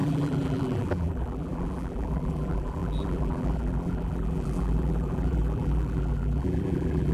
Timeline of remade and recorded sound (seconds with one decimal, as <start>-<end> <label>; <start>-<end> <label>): 0.0-7.1 remade